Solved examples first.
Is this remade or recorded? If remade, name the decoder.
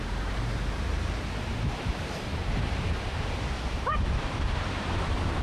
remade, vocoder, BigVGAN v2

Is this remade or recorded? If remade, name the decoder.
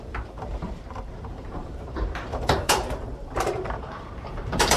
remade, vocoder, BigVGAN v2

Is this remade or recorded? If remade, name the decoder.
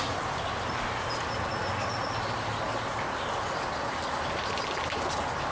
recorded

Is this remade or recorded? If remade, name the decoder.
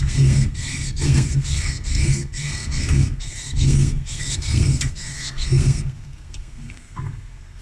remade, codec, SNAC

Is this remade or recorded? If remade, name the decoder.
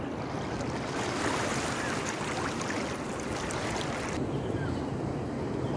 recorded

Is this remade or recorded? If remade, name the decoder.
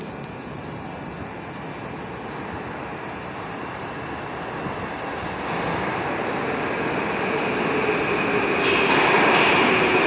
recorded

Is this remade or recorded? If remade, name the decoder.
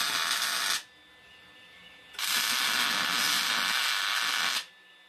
recorded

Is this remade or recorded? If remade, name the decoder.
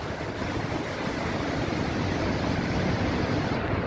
recorded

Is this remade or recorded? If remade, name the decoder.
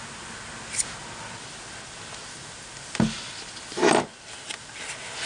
recorded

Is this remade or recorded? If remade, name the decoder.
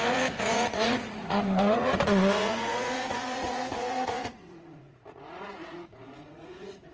remade, vocoder, Vocos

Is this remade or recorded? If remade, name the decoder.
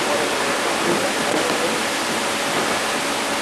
recorded